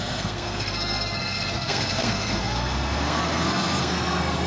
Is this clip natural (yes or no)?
no